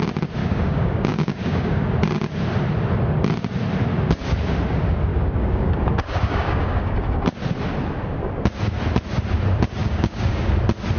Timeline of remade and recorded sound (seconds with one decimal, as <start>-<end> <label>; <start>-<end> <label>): 0.0-0.4 recorded; 0.4-1.9 remade; 1.9-5.1 recorded; 5.1-7.0 remade; 7.0-9.8 recorded; 9.8-10.5 remade; 10.5-11.0 recorded